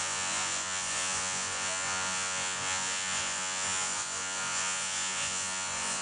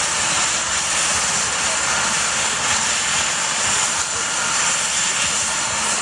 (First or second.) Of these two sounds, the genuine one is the second